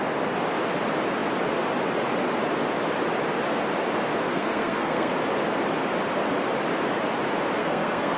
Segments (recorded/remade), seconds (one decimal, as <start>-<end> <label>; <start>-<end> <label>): 0.0-4.3 recorded; 4.3-5.1 remade; 5.1-7.6 recorded; 7.6-8.2 remade